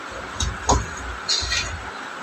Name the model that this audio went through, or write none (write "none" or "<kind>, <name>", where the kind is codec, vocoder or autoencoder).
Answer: none